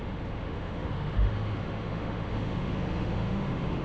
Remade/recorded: remade